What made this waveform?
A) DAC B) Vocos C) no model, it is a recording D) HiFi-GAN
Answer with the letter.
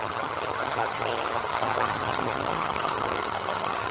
D